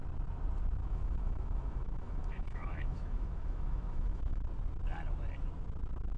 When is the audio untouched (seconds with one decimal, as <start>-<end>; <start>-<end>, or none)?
0.0-0.8; 4.4-6.2